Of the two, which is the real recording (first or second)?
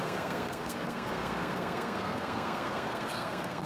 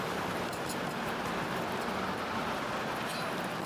second